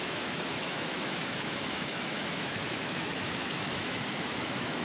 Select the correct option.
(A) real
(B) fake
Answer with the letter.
B